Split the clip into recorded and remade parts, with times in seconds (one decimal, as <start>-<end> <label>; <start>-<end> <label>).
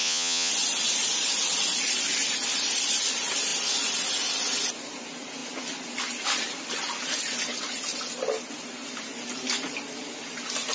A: 0.0-0.5 remade; 0.5-10.7 recorded